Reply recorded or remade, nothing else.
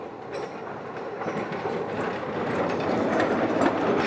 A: recorded